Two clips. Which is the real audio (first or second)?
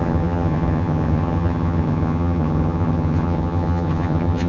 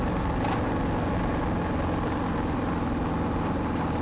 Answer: second